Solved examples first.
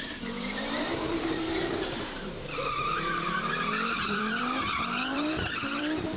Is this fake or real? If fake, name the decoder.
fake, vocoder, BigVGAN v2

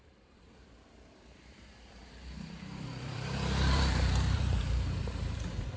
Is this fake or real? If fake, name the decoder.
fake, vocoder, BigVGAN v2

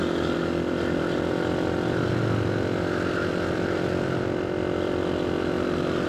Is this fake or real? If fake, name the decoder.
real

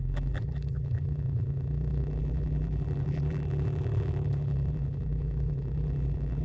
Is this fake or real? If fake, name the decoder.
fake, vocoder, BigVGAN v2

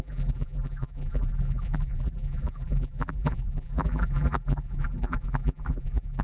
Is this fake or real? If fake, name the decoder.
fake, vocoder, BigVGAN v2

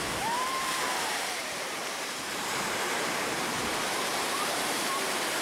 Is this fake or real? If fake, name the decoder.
fake, vocoder, BigVGAN v2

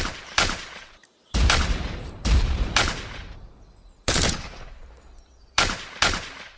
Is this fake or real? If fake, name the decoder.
fake, vocoder, BigVGAN v2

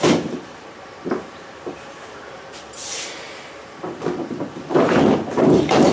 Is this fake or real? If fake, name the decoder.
fake, vocoder, BigVGAN v2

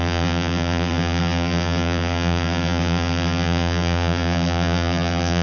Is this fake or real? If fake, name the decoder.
fake, vocoder, BigVGAN v2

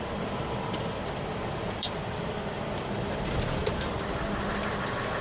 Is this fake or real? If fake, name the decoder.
fake, vocoder, BigVGAN v2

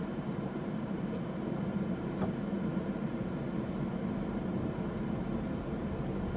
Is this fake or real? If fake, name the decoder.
fake, vocoder, BigVGAN v2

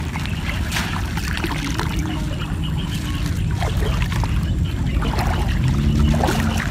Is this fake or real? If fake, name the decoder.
real